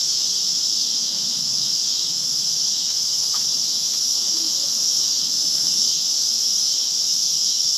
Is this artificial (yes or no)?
yes